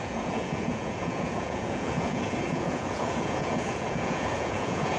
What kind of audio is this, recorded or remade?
remade